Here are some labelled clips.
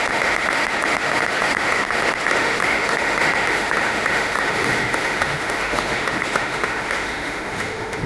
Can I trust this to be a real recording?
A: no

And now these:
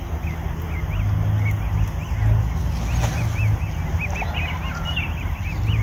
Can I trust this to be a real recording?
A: yes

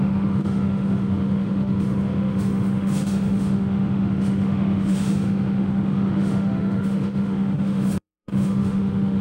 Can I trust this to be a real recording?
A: no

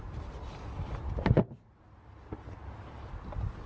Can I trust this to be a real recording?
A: yes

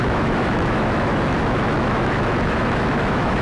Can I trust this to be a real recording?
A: no